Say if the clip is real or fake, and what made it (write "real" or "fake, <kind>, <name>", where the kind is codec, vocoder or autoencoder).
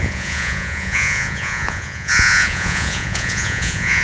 fake, vocoder, Vocos